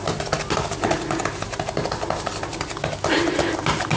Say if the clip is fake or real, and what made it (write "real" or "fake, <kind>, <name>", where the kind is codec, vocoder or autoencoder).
real